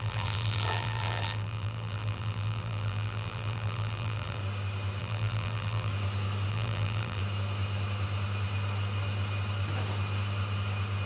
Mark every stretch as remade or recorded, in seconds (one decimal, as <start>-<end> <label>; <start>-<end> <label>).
0.0-4.4 remade; 4.4-5.0 recorded; 5.0-5.9 remade; 5.9-6.5 recorded; 6.5-7.2 remade; 7.2-11.1 recorded